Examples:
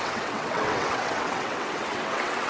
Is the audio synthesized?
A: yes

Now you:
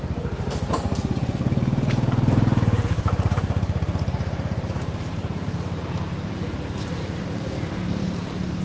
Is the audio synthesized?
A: yes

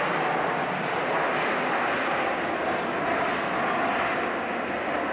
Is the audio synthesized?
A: no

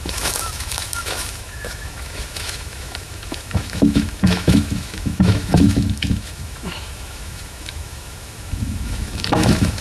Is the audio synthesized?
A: yes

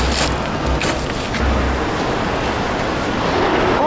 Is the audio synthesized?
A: no